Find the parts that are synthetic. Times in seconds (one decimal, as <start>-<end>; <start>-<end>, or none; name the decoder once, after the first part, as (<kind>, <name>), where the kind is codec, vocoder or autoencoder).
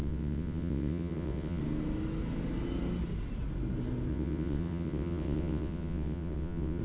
0.0-1.6 (vocoder, WaveNeXt); 4.1-6.8